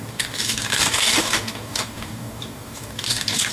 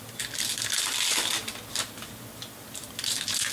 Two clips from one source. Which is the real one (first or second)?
second